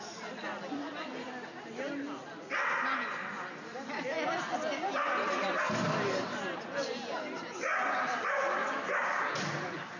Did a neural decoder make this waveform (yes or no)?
no